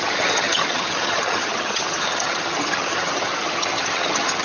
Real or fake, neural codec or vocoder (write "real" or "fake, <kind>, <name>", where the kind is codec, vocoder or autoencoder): fake, vocoder, HiFi-GAN